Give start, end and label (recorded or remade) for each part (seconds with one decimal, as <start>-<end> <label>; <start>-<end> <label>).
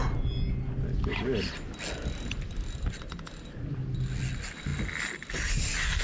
0.0-6.0 recorded